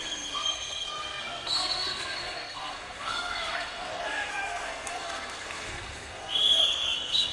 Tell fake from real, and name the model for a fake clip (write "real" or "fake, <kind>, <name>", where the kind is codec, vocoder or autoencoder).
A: fake, codec, SNAC